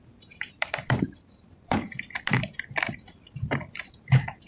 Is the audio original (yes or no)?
no